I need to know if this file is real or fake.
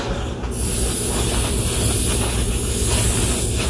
real